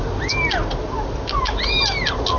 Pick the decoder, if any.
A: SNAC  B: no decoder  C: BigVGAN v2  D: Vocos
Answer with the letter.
B